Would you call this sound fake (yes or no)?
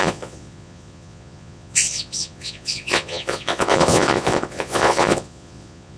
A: yes